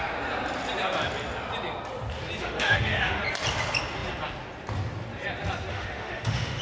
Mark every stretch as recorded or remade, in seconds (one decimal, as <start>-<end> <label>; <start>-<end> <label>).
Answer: 0.0-2.4 recorded; 2.4-3.2 remade; 3.2-5.7 recorded; 5.7-6.6 remade